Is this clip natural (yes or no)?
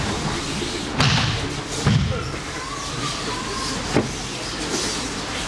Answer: yes